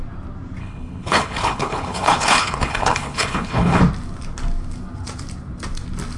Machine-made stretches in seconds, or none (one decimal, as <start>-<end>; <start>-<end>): 0.6-3.8